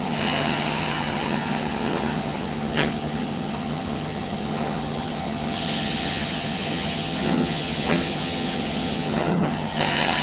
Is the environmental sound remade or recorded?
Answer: remade